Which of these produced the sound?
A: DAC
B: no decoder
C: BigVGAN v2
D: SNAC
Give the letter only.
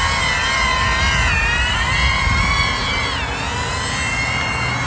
B